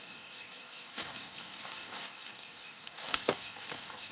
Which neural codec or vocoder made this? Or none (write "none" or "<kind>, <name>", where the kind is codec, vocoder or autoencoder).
codec, DAC